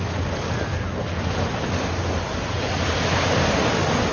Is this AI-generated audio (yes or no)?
no